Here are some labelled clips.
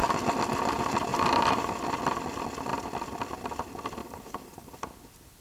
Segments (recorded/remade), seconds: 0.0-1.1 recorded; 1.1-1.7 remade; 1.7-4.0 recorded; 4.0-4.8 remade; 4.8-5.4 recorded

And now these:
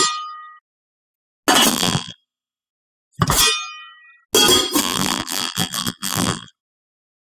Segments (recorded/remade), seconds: 0.0-1.7 recorded; 1.7-2.7 remade; 2.7-4.8 recorded; 4.8-6.6 remade; 6.6-7.3 recorded

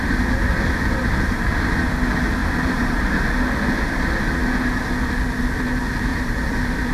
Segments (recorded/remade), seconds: 0.0-2.4 recorded; 2.4-3.0 remade; 3.0-6.1 recorded; 6.1-6.9 remade

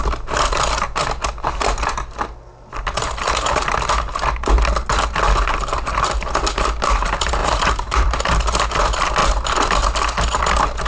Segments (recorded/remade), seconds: 0.0-7.4 recorded; 7.4-8.2 remade; 8.2-10.9 recorded

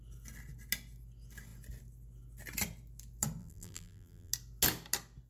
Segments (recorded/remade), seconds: 0.0-3.4 recorded; 3.4-4.3 remade; 4.3-5.3 recorded

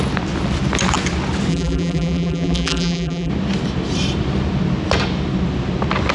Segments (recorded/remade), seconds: 0.0-1.5 recorded; 1.5-3.3 remade; 3.3-6.1 recorded

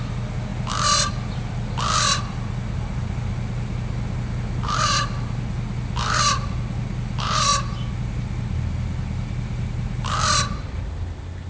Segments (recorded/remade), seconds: 0.0-11.5 recorded